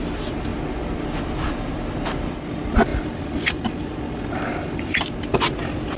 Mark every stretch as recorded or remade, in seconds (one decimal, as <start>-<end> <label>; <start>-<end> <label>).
0.0-2.9 recorded; 2.9-4.9 remade; 4.9-6.0 recorded